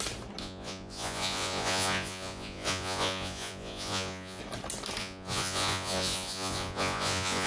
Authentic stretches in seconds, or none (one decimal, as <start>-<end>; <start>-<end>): 0.0-0.4; 4.4-5.0